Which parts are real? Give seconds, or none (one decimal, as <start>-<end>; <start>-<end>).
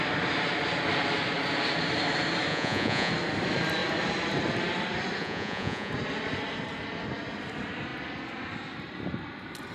0.0-2.5; 3.1-5.2; 5.9-9.7